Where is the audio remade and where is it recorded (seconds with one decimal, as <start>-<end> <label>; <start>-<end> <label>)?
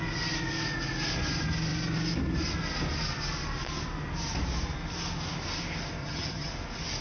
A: 0.0-6.0 recorded; 6.0-6.5 remade; 6.5-7.0 recorded